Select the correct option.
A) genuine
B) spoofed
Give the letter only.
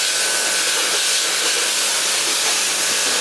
A